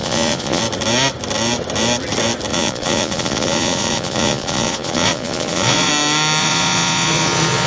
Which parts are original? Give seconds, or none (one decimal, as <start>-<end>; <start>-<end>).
0.6-2.5; 5.9-6.4